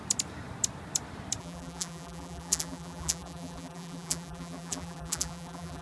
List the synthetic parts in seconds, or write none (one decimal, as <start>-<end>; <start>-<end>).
1.4-5.8